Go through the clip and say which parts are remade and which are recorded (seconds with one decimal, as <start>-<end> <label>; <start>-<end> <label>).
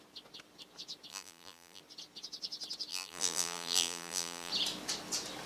0.0-1.1 recorded; 1.1-1.8 remade; 1.8-2.9 recorded; 2.9-4.5 remade; 4.5-5.5 recorded